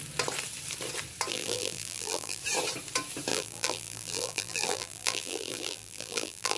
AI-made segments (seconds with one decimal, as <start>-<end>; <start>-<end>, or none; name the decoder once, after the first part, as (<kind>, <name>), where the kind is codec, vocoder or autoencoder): 1.3-2.4 (vocoder, BigVGAN v2); 3.3-6.6